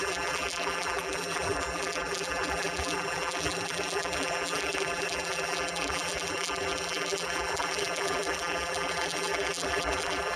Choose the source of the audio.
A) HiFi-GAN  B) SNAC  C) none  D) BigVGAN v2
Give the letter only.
D